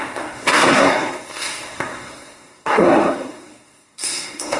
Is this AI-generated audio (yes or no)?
yes